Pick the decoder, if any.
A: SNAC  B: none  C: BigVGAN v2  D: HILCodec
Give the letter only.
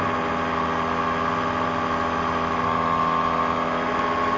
B